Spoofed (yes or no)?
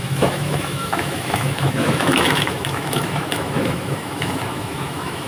yes